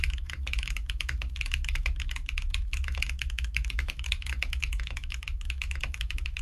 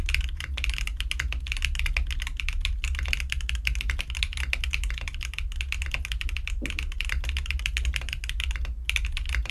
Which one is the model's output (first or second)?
first